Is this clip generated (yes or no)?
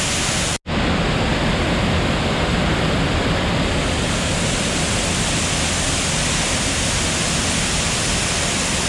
no